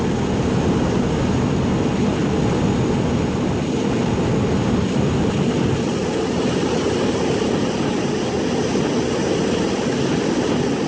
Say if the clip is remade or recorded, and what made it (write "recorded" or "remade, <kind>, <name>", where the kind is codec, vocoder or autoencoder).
recorded